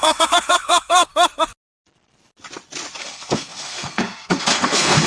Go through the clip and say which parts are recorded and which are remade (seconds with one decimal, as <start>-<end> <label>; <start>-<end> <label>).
0.0-1.1 remade; 1.1-3.0 recorded; 3.0-5.1 remade

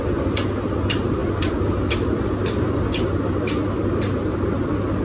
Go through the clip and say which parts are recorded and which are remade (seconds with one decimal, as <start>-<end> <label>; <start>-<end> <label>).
0.0-5.0 recorded

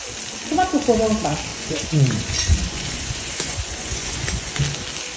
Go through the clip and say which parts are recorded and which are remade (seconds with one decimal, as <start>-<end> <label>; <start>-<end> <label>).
0.0-1.5 recorded; 1.5-4.6 remade; 4.6-5.2 recorded

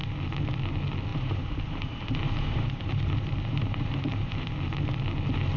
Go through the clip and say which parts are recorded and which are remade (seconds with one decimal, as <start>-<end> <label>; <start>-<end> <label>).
0.0-1.1 recorded; 1.1-4.5 remade; 4.5-5.6 recorded